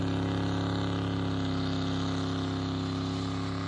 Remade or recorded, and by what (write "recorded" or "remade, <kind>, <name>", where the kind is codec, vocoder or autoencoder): recorded